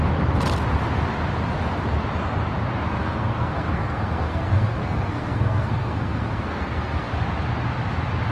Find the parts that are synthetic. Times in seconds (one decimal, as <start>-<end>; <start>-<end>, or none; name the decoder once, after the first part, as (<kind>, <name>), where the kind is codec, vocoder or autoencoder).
3.0-7.1 (codec, SNAC)